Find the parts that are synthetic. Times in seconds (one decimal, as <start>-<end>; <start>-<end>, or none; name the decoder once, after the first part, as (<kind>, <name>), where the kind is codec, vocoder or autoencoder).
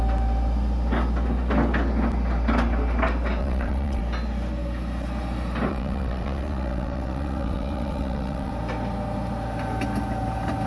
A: 3.4-4.0 (vocoder, WaveNeXt); 5.7-8.5